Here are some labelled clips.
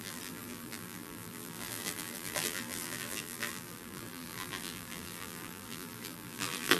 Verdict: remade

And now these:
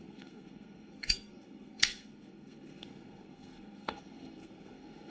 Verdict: remade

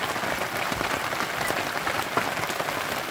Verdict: recorded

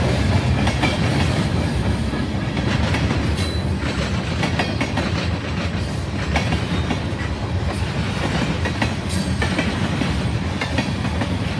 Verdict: remade